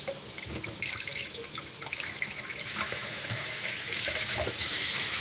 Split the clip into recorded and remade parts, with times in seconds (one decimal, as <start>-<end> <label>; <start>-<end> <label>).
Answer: 0.0-5.2 remade